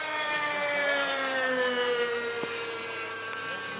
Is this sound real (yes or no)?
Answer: no